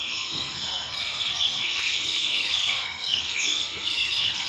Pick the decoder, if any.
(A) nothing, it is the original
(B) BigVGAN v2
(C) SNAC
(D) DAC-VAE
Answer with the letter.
C